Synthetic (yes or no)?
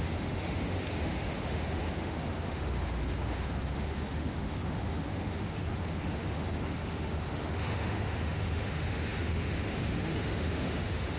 yes